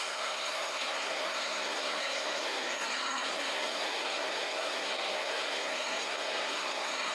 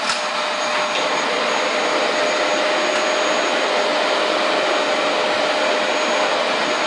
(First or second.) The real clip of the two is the second